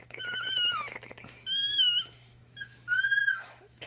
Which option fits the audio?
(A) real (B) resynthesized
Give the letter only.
B